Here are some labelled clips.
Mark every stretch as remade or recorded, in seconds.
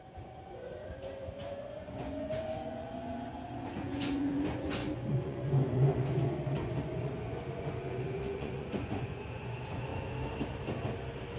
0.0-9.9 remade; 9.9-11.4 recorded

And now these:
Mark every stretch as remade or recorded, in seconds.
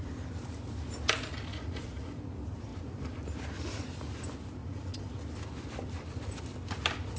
0.0-1.5 recorded; 1.5-2.2 remade; 2.2-4.6 recorded; 4.6-5.1 remade; 5.1-7.2 recorded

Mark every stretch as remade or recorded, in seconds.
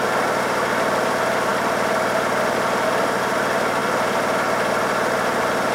0.0-5.7 recorded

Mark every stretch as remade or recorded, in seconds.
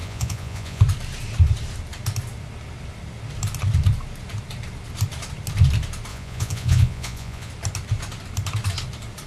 0.0-0.8 remade; 0.8-6.1 recorded; 6.1-7.5 remade; 7.5-9.3 recorded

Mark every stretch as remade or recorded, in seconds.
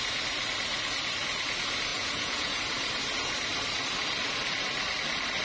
0.0-1.9 recorded; 1.9-2.6 remade; 2.6-5.4 recorded